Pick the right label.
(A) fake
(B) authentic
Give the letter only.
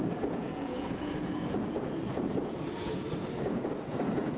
A